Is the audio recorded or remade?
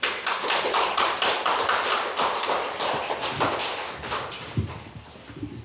recorded